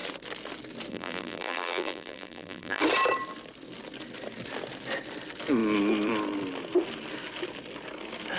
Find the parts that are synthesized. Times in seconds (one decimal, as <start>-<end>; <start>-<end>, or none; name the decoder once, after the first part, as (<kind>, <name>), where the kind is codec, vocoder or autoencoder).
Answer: 0.9-2.8 (vocoder, BigVGAN v2)

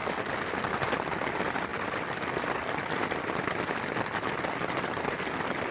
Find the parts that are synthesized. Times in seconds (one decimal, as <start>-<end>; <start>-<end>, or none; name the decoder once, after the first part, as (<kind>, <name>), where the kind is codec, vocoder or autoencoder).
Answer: none

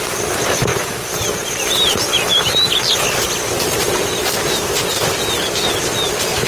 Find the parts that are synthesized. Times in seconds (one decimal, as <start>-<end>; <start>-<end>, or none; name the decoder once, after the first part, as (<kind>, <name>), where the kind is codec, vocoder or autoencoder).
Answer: none

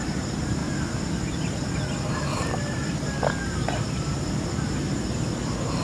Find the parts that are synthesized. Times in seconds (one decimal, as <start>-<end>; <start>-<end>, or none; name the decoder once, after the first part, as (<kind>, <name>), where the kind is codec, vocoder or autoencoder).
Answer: 0.0-0.6 (vocoder, BigVGAN v2); 3.4-5.8

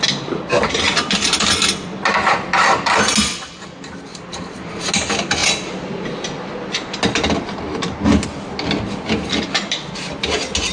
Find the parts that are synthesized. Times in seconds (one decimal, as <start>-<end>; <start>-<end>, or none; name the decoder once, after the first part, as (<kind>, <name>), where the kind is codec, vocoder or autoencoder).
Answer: 4.1-4.9 (vocoder, BigVGAN v2)